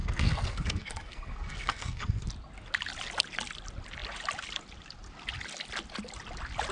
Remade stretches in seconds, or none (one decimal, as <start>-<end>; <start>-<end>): 0.0-2.3